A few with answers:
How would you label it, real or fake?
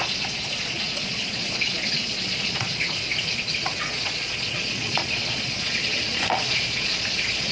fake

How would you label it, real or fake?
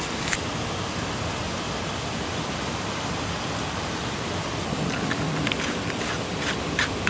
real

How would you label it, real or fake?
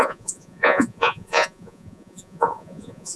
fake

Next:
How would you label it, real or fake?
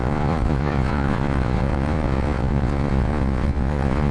fake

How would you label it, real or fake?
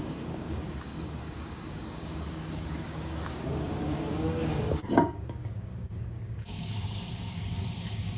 fake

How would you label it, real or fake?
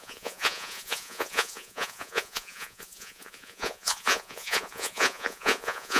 fake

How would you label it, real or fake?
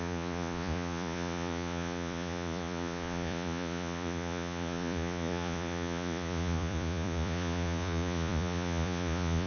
fake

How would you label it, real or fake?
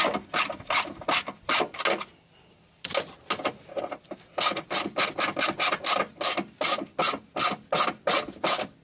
real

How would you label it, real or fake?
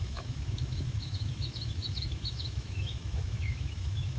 fake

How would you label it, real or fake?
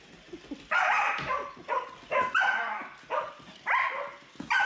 real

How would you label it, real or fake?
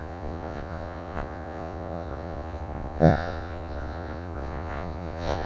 fake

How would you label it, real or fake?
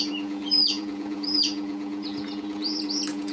fake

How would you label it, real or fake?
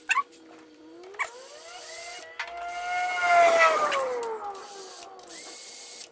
real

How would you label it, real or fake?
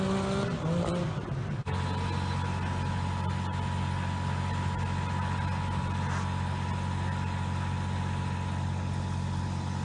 real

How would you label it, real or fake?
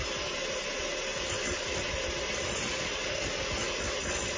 real